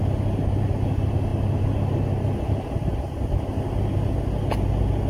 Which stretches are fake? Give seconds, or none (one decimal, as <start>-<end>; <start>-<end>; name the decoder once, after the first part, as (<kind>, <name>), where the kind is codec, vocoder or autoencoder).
none